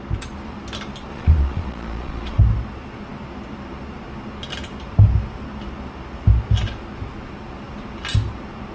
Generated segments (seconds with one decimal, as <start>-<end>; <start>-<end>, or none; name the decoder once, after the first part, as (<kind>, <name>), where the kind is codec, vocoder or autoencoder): 1.1-2.4 (vocoder, Vocos)

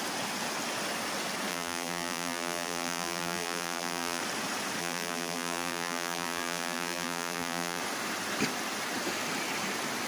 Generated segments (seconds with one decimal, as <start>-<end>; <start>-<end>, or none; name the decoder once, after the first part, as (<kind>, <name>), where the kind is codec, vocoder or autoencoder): 1.5-4.2 (vocoder, BigVGAN v2); 4.8-7.8

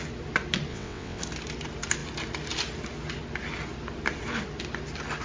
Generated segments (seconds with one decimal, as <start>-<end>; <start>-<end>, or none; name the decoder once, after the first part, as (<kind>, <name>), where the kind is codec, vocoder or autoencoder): 0.7-1.2 (vocoder, WaveNeXt)

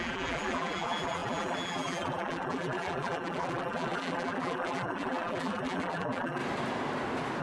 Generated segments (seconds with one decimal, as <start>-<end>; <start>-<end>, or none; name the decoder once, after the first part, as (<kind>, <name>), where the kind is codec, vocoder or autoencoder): 0.0-6.4 (vocoder, BigVGAN v2)